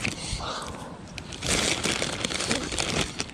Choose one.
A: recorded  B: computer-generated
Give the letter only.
A